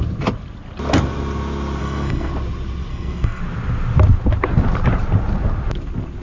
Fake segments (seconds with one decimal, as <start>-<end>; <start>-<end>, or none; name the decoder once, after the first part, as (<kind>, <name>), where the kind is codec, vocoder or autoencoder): 1.8-2.3 (codec, SNAC); 2.9-3.4